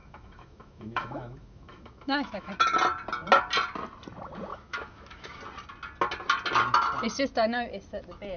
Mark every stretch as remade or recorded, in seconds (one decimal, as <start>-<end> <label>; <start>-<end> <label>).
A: 0.0-2.5 remade; 2.5-4.5 recorded; 4.5-5.4 remade; 5.4-8.4 recorded